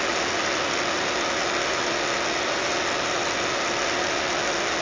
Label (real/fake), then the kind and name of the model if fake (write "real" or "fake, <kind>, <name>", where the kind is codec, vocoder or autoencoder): real